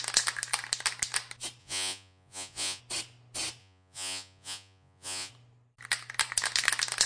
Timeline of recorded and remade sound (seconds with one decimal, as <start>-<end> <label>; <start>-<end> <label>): 0.0-1.6 recorded; 1.6-2.8 remade; 2.8-3.6 recorded; 3.6-5.3 remade; 5.3-7.1 recorded